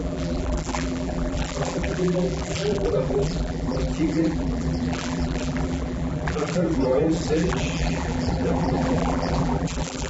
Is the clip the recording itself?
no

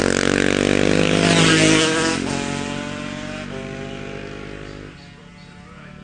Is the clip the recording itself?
yes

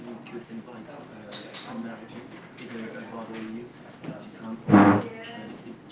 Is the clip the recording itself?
yes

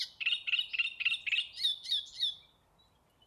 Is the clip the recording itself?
yes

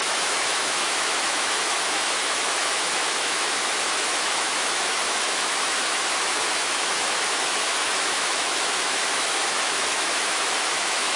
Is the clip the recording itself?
no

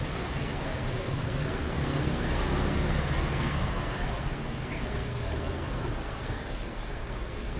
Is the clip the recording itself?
no